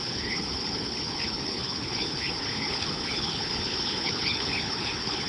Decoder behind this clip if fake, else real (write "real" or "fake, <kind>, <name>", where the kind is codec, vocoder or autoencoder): fake, codec, HILCodec